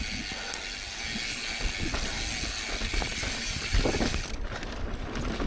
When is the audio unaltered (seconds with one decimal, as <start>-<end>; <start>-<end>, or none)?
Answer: 0.0-3.1; 5.0-5.5